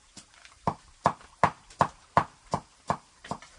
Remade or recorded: recorded